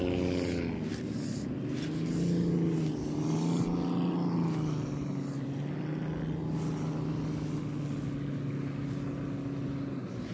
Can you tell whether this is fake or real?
real